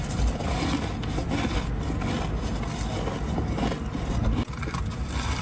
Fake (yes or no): no